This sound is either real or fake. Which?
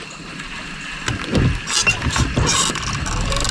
real